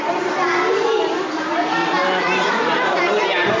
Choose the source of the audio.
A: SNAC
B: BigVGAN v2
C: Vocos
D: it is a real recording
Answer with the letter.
B